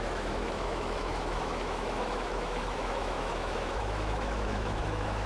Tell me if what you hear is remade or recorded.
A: remade